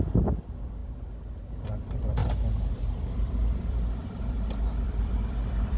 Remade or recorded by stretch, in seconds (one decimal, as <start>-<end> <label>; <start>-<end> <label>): 0.0-0.8 remade; 0.8-1.5 recorded; 1.5-5.8 remade